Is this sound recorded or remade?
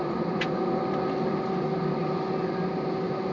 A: recorded